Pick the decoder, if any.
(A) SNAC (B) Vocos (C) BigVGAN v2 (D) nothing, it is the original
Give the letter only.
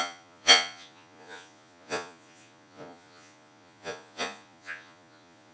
B